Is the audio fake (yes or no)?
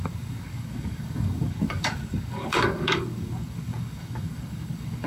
yes